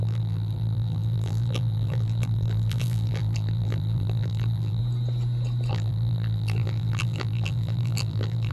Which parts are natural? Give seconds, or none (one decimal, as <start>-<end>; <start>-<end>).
4.8-5.7